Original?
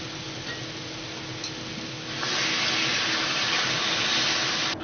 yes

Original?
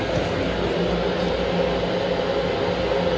yes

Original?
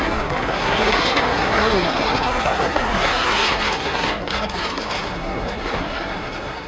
no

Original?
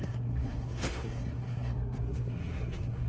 no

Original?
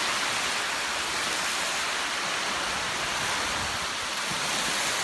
yes